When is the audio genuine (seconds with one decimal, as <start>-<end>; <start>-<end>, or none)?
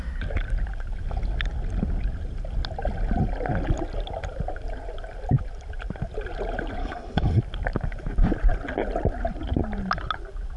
0.0-6.8; 7.4-10.6